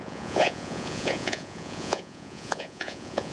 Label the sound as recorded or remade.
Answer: remade